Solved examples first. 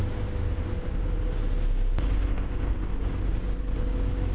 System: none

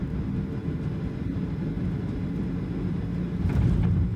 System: none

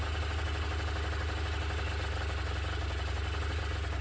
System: none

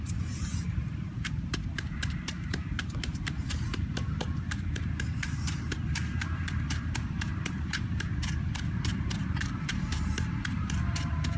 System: vocoder, BigVGAN v2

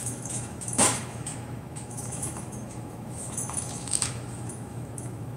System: autoencoder, DAC-VAE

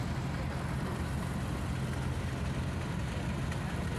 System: none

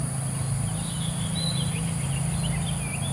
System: none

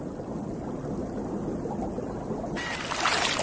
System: none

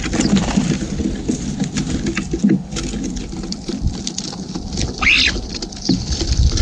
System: none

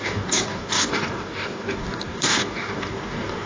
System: codec, DAC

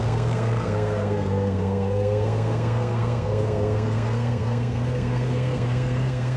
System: codec, SNAC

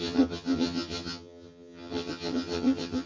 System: vocoder, HiFi-GAN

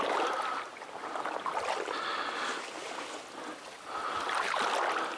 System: none